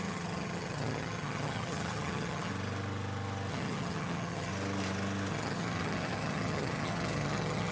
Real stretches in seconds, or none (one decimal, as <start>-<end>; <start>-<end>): 2.5-3.5; 4.5-5.3